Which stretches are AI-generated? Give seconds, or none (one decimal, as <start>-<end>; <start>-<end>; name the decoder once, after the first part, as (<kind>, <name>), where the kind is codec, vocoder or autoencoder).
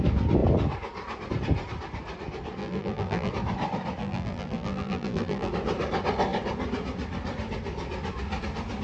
2.6-3.3 (vocoder, BigVGAN v2); 4.0-5.5